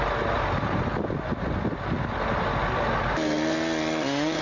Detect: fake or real real